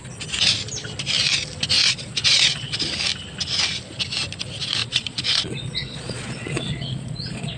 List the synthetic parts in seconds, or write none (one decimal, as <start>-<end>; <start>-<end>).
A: 1.8-2.9; 4.8-7.6